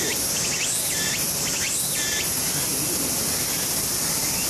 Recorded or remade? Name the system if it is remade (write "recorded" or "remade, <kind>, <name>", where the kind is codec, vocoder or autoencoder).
recorded